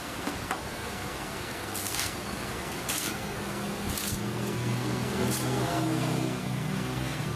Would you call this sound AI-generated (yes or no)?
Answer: yes